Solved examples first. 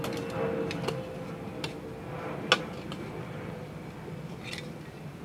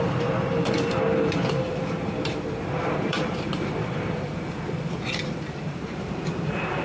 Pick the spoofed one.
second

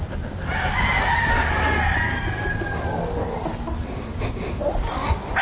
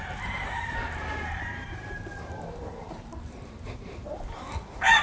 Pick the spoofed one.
second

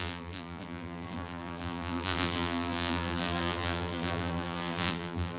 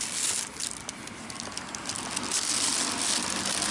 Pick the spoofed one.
first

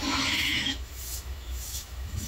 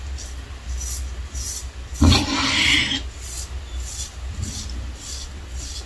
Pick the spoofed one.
first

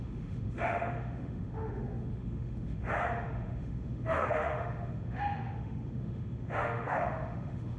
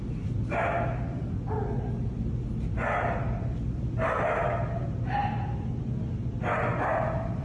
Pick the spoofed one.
first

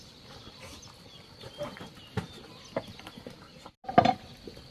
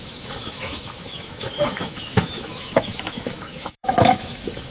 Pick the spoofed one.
second